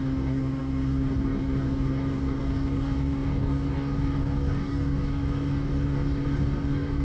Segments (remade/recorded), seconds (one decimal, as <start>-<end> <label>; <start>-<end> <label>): 0.0-7.0 remade